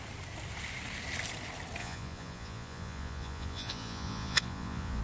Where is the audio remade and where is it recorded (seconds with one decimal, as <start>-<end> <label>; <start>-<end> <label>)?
0.0-1.8 recorded; 1.8-5.0 remade